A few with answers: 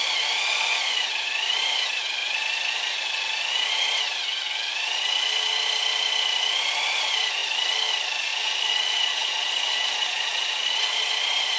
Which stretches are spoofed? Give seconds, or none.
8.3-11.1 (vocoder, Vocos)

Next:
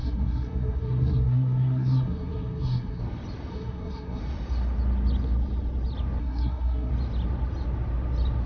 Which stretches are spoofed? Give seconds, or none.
0.0-3.0 (codec, SNAC); 3.5-4.2; 6.2-6.9